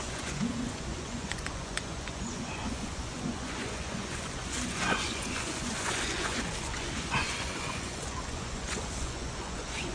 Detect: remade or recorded remade